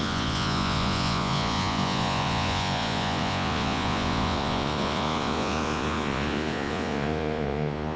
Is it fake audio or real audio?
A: fake